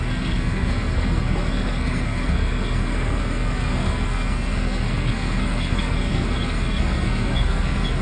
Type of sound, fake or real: fake